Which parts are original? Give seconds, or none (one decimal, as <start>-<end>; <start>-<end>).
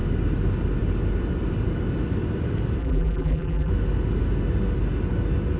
0.0-2.8; 3.7-5.6